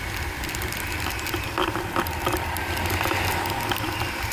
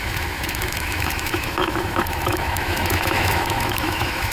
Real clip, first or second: first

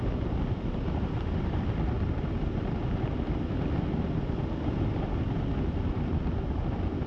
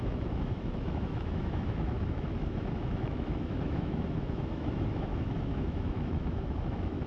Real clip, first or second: first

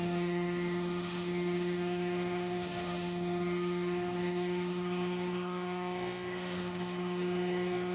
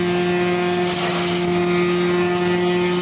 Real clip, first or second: second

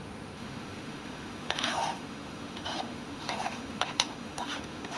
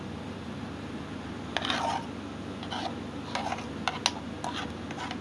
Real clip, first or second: second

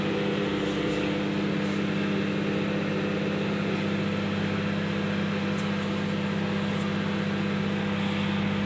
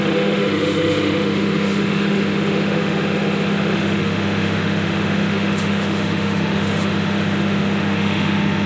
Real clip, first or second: first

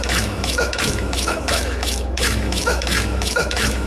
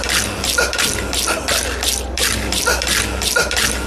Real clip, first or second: second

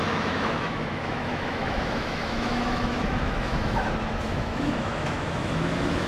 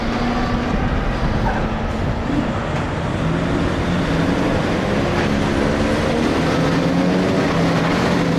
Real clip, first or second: second